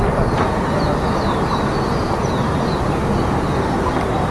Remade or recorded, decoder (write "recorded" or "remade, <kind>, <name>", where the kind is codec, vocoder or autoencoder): recorded